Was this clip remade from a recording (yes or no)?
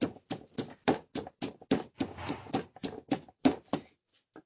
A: no